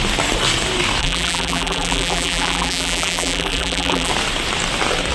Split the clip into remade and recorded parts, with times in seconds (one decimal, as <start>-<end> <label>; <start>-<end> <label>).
0.0-1.0 recorded; 1.0-4.1 remade; 4.1-5.1 recorded